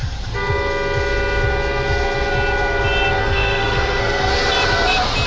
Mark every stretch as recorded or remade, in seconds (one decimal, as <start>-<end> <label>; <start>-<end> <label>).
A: 0.0-3.2 recorded; 3.2-4.3 remade; 4.3-5.3 recorded